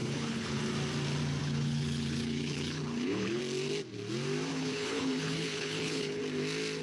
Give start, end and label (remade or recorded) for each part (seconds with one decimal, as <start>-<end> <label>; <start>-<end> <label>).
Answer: 0.0-0.6 remade; 0.6-1.4 recorded; 1.4-3.4 remade; 3.4-4.5 recorded; 4.5-6.2 remade; 6.2-6.8 recorded